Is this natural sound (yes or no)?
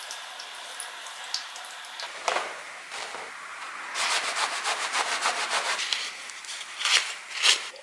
yes